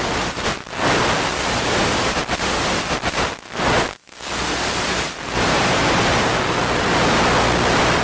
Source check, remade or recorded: recorded